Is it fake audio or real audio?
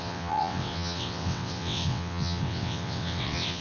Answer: fake